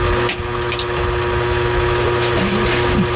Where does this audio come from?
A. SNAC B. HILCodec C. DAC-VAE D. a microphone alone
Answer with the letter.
D